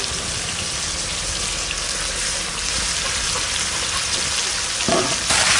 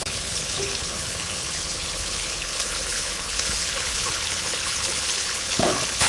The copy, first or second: second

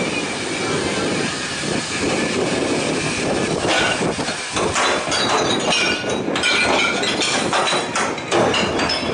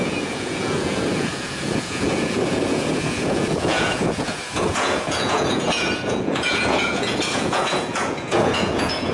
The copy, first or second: second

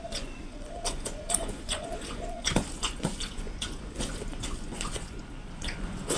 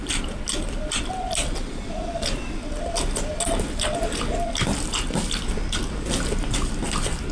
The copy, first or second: first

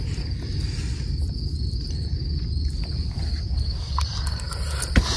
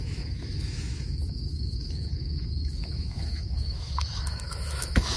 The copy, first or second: second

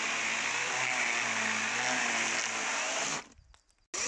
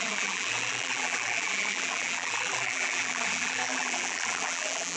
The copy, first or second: second